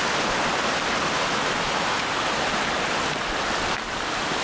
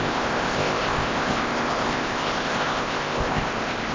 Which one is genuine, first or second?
first